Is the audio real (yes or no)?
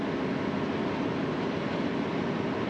yes